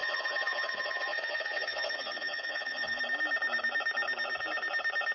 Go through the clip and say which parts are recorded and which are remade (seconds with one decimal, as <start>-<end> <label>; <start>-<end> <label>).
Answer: 0.0-3.0 remade; 3.0-5.1 recorded